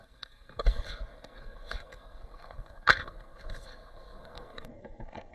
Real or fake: fake